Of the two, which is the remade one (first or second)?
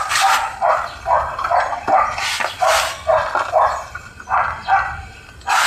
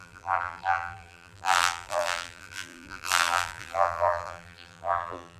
second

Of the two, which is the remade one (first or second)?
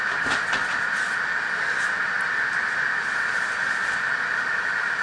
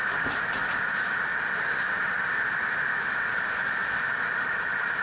second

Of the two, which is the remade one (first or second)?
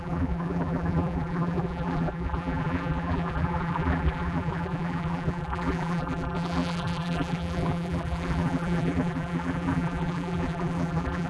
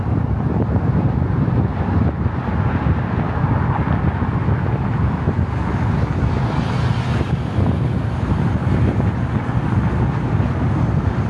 first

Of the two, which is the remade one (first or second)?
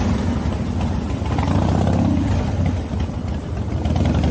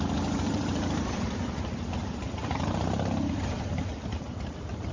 second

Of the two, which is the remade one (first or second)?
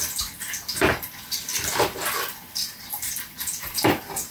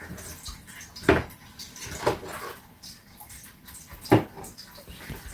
first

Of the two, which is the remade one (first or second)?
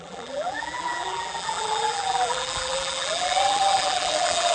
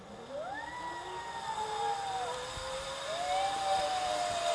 first